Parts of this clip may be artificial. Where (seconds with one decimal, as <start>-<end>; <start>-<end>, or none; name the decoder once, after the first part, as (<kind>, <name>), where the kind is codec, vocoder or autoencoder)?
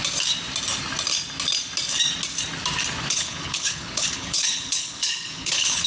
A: 3.1-5.9 (codec, HILCodec)